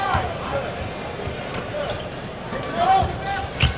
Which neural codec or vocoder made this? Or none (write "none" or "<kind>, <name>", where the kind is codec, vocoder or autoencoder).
vocoder, BigVGAN v2